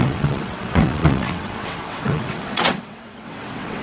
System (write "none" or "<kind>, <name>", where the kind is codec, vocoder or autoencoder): vocoder, WaveNeXt